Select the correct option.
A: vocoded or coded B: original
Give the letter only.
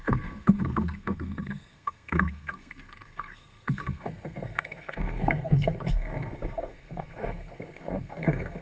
A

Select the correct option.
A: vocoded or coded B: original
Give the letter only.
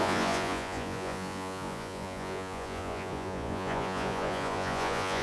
A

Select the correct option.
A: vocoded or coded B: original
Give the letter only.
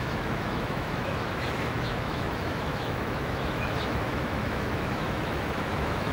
A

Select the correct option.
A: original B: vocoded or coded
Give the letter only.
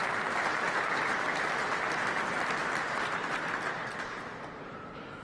B